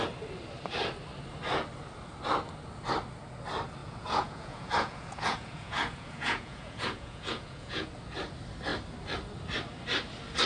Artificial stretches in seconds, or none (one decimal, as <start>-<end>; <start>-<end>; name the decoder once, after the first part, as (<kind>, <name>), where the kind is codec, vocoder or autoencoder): 3.8-7.9 (vocoder, Vocos)